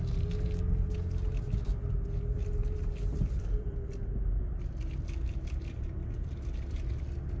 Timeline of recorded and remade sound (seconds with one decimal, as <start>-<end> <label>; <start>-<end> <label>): 0.0-2.6 recorded; 2.6-6.9 remade; 6.9-7.4 recorded